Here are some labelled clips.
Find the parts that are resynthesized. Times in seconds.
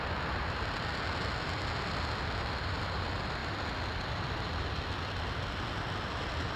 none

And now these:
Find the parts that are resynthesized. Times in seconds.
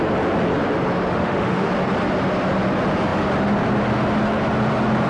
1.1-1.7 (autoencoder, DAC-VAE)